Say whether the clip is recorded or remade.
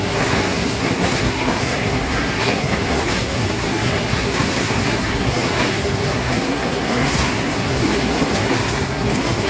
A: remade